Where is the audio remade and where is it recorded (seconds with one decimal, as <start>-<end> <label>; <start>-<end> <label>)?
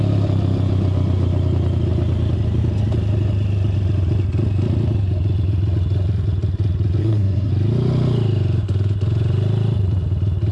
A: 0.0-7.0 recorded; 7.0-7.5 remade; 7.5-10.5 recorded